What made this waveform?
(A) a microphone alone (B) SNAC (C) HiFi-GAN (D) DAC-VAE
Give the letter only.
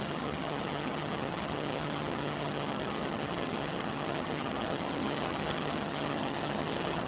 C